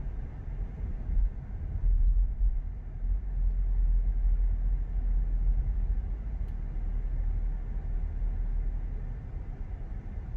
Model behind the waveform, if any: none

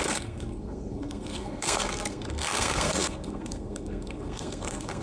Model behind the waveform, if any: codec, SNAC